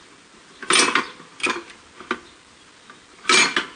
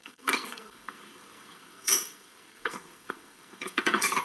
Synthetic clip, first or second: second